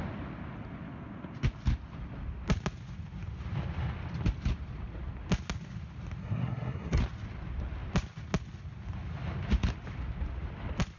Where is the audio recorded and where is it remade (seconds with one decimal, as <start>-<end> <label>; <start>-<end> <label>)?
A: 0.0-6.2 recorded; 6.2-7.0 remade; 7.0-11.0 recorded